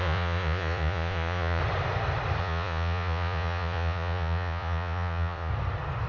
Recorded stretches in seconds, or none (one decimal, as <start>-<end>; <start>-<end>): 1.6-2.4; 5.5-6.1